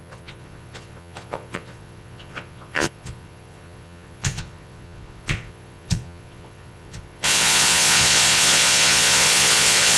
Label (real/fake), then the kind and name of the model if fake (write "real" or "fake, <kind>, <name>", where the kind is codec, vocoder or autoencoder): fake, vocoder, Vocos